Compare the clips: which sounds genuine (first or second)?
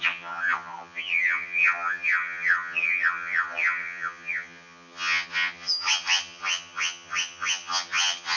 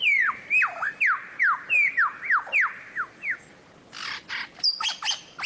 second